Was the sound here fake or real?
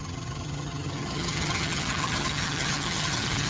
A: fake